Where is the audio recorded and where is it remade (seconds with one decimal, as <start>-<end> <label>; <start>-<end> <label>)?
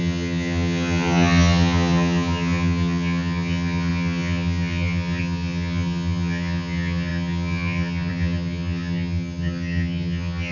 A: 0.0-10.5 remade